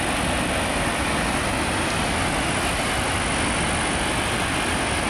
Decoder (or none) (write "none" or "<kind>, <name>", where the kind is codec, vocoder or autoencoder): none